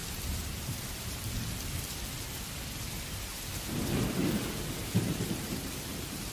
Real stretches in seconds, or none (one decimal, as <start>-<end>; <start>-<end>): 0.8-4.2